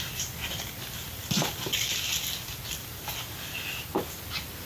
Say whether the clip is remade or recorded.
recorded